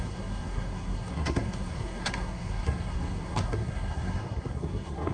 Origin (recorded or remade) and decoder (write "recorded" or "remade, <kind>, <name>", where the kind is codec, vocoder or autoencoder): remade, codec, SNAC